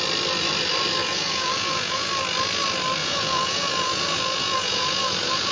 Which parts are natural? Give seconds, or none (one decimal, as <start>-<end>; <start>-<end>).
0.0-1.0; 2.1-3.0